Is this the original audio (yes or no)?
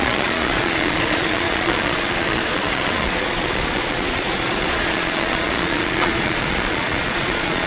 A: no